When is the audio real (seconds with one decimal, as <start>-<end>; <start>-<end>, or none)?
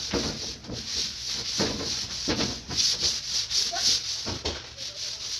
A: 0.0-0.6; 3.1-5.4